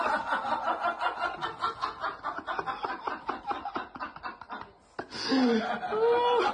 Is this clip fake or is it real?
real